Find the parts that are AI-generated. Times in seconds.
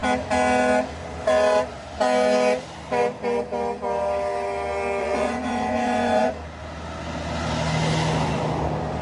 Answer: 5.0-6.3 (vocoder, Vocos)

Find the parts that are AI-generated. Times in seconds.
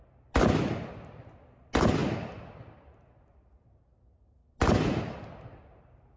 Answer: none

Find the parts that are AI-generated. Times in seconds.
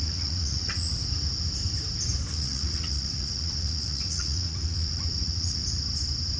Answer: 0.0-0.9 (vocoder, Vocos); 2.3-5.6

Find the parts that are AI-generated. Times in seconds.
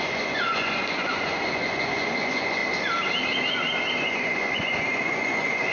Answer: 0.0-2.6 (vocoder, Vocos); 4.0-5.7